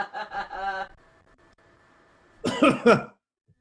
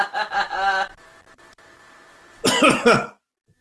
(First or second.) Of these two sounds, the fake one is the first